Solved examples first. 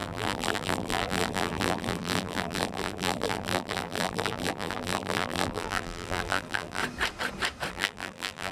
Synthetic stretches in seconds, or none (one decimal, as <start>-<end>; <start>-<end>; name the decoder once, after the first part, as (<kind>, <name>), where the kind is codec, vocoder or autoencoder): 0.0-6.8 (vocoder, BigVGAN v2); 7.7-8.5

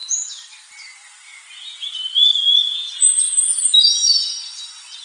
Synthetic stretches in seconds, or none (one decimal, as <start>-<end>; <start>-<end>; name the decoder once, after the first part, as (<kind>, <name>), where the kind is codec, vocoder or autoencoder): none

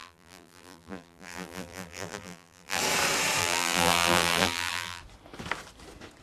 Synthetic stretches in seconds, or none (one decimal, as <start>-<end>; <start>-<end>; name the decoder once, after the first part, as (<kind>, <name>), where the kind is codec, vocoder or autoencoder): 0.0-2.8 (vocoder, BigVGAN v2); 3.4-5.0

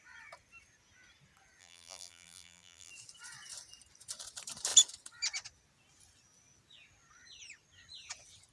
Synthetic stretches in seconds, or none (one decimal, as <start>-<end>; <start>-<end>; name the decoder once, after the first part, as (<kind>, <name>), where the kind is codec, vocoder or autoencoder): 1.6-2.9 (vocoder, BigVGAN v2)

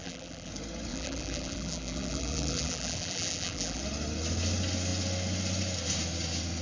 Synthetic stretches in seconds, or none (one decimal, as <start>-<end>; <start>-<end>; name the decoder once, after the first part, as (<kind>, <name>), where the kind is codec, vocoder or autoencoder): 0.0-0.5 (vocoder, BigVGAN v2); 0.9-3.8